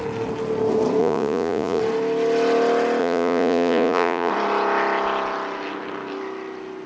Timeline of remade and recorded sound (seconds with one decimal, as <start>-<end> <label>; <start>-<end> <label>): 0.0-1.0 recorded; 1.0-1.8 remade; 1.8-3.0 recorded; 3.0-4.3 remade; 4.3-6.9 recorded